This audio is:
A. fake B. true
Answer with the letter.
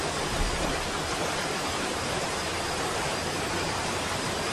A